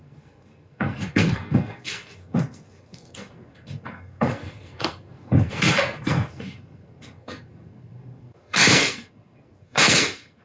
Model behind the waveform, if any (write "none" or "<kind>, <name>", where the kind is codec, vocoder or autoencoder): codec, SNAC